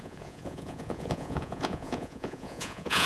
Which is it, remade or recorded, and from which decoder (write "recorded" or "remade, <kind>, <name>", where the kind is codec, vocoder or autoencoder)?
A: remade, vocoder, Vocos